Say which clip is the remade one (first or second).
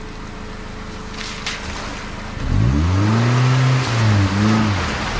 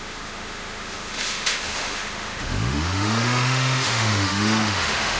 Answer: second